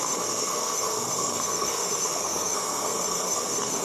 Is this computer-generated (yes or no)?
yes